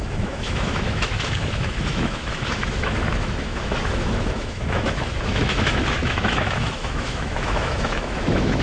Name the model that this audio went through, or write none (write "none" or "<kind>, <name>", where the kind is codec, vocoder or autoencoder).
autoencoder, DAC-VAE